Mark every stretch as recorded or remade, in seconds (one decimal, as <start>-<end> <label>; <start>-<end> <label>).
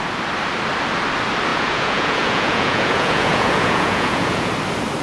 0.0-1.5 recorded; 1.5-4.5 remade; 4.5-5.0 recorded